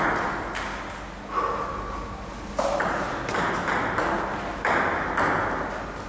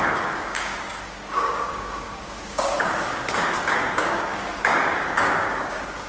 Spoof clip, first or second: second